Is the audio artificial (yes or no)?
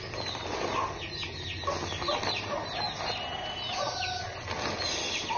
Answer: no